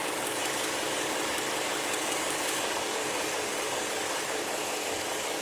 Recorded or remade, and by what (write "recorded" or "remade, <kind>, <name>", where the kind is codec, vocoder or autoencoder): remade, codec, DAC